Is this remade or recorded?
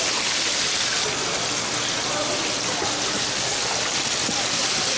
recorded